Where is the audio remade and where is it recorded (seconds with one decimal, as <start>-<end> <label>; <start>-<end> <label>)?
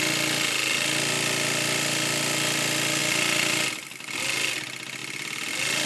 0.0-5.9 recorded